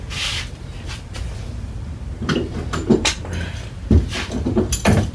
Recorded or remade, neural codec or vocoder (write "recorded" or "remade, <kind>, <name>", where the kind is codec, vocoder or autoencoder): recorded